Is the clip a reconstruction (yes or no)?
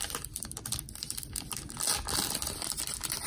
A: yes